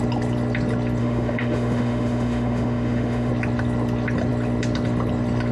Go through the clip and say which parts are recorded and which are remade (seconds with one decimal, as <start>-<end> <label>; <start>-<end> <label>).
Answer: 0.0-1.0 recorded; 1.0-3.3 remade; 3.3-5.5 recorded

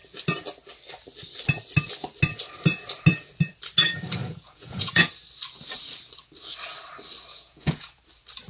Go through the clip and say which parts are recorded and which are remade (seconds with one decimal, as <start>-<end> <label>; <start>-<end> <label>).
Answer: 0.0-4.2 recorded; 4.2-5.1 remade; 5.1-7.3 recorded; 7.3-8.0 remade; 8.0-8.5 recorded